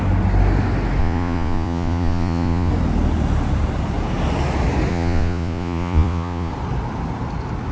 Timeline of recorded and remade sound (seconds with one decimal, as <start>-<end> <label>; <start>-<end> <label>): 0.0-1.0 recorded; 1.0-2.7 remade; 2.7-4.9 recorded; 4.9-6.5 remade; 6.5-7.7 recorded